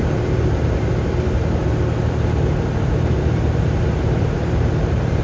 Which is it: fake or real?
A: fake